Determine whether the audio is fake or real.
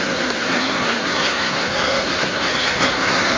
fake